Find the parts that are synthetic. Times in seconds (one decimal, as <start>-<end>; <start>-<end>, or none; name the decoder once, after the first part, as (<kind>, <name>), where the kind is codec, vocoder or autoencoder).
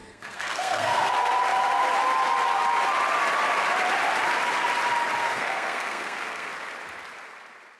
0.0-1.1 (codec, SNAC); 5.2-6.5